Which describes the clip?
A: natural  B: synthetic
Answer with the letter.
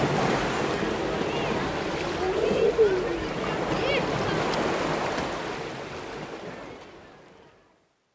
A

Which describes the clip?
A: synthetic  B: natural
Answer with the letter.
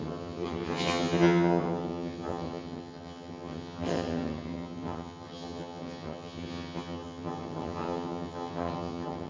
A